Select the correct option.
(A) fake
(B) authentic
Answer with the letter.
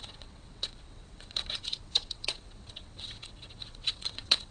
A